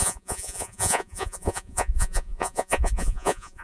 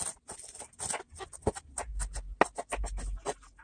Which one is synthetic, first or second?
first